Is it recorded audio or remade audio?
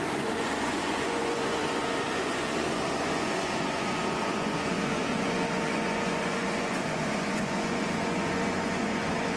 remade